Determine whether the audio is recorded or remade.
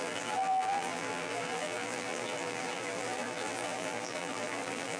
remade